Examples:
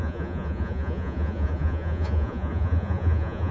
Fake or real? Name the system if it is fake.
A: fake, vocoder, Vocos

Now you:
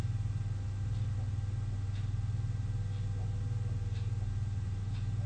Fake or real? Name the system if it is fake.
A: real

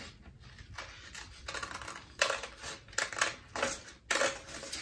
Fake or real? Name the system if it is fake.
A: real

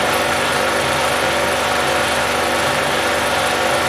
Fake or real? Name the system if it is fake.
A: real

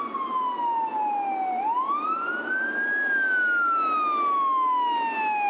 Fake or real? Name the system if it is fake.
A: real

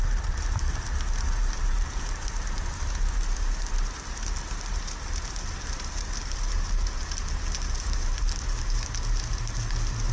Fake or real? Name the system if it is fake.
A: real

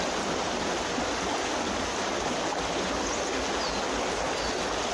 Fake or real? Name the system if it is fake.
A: real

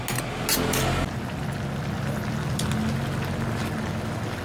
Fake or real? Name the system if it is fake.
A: real